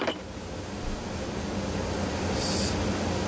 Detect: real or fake real